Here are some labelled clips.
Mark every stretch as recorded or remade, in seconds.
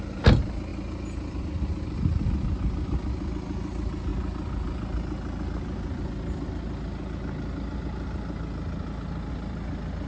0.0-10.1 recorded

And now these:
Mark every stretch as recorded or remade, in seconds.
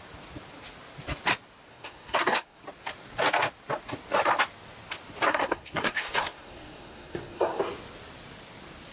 0.0-1.7 recorded; 1.7-2.6 remade; 2.6-5.3 recorded; 5.3-7.6 remade; 7.6-8.9 recorded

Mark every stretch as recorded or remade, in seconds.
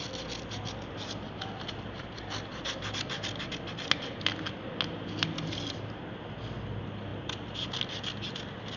0.0-8.8 recorded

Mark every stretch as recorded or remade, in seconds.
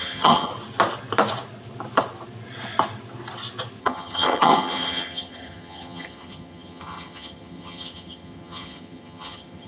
0.0-0.5 remade; 0.5-3.8 recorded; 3.8-9.7 remade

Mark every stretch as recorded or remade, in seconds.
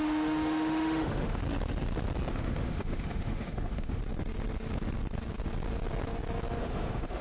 0.0-1.4 remade; 1.4-2.3 recorded; 2.3-4.0 remade; 4.0-6.6 recorded; 6.6-7.2 remade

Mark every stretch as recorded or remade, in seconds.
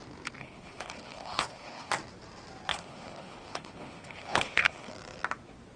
0.0-0.4 recorded; 0.4-1.9 remade; 1.9-2.7 recorded; 2.7-4.9 remade; 4.9-5.8 recorded